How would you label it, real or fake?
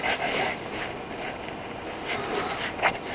real